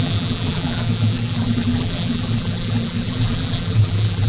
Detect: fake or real fake